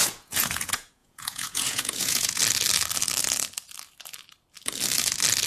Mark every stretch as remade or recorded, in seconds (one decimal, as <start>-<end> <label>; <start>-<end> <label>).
0.0-2.4 remade; 2.4-5.5 recorded